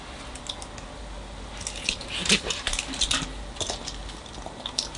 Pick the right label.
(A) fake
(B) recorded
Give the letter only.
B